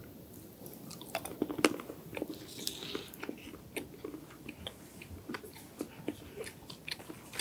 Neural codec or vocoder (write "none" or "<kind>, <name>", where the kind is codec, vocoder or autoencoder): none